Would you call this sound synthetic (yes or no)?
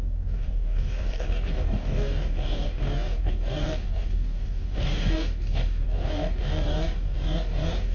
yes